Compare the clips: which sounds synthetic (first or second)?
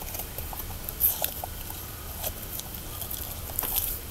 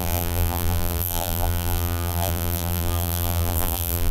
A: second